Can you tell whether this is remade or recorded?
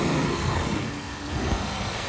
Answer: remade